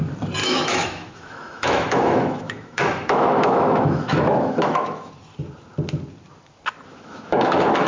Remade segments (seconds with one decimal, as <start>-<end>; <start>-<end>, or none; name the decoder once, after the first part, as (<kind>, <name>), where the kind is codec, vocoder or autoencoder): 0.4-5.1 (autoencoder, DAC-VAE); 6.9-7.9